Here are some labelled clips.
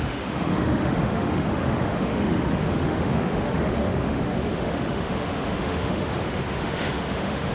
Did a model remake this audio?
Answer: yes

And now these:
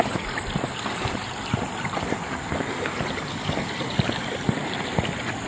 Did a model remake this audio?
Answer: no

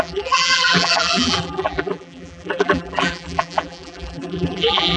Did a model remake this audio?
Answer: yes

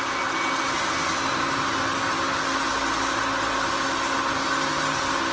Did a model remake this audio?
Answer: no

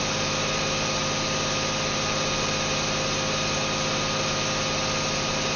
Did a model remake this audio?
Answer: no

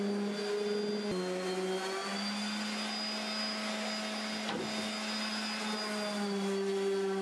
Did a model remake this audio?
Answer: no